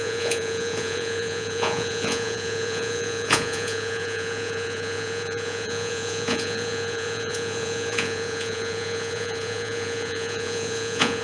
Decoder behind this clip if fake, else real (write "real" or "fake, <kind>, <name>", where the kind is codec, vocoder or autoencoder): fake, vocoder, Vocos